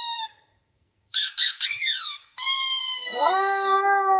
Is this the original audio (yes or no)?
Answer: no